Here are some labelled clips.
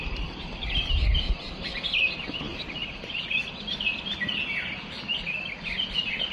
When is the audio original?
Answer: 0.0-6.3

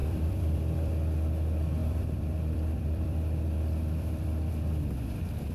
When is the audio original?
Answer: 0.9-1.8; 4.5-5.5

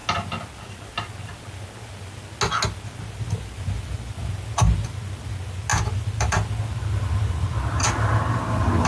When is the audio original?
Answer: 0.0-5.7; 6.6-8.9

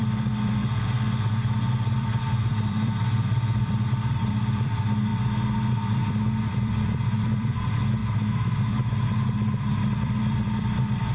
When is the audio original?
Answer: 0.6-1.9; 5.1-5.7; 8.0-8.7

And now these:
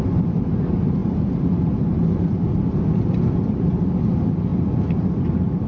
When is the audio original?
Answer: 0.0-1.0; 2.6-5.7

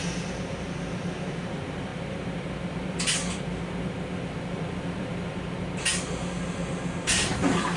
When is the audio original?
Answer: 0.0-1.9; 5.4-7.8